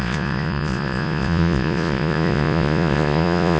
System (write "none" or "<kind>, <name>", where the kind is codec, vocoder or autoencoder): vocoder, Vocos